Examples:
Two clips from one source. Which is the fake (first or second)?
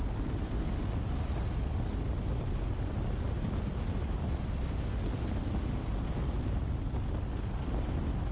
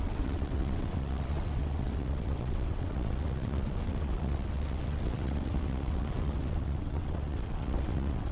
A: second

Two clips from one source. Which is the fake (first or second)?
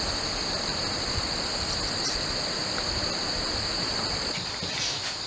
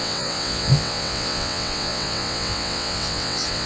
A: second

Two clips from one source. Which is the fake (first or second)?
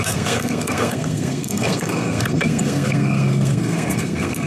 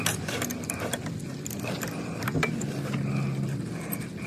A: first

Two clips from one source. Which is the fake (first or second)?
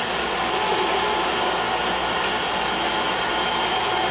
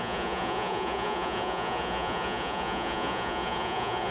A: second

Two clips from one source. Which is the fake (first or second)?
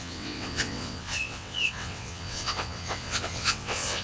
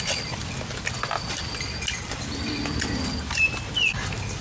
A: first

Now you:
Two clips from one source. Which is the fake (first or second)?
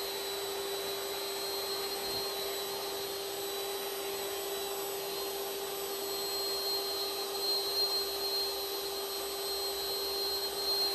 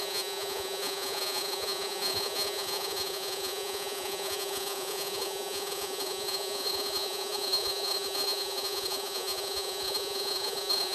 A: second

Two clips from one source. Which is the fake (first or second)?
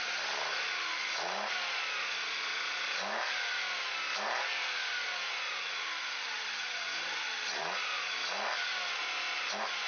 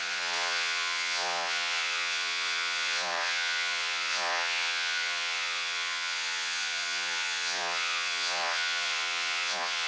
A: second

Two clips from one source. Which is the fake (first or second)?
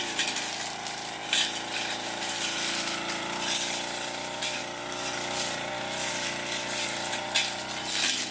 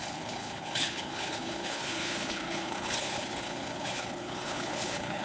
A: second